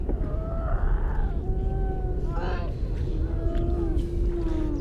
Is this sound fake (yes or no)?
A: no